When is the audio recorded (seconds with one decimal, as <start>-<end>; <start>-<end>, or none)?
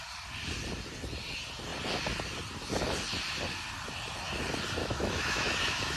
0.0-4.8